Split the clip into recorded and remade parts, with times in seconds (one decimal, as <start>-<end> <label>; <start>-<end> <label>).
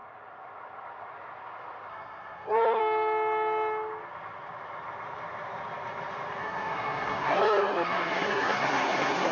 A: 0.0-1.9 recorded; 1.9-2.8 remade; 2.8-6.4 recorded; 6.4-9.3 remade